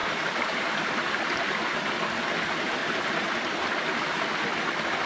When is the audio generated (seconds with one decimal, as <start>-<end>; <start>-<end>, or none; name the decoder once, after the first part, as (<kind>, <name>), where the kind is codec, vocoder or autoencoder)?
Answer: 0.0-0.9 (vocoder, BigVGAN v2); 2.8-3.7